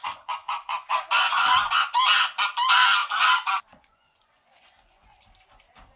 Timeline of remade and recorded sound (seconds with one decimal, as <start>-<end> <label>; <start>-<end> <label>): 0.0-2.0 remade; 2.0-3.0 recorded; 3.0-5.2 remade; 5.2-6.0 recorded